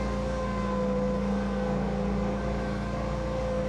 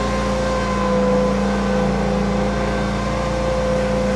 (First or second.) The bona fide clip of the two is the second